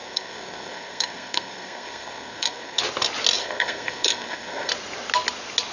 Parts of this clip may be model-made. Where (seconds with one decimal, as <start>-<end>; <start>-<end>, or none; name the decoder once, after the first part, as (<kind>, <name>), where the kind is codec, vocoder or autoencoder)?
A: 0.0-2.8 (codec, SNAC); 3.4-4.7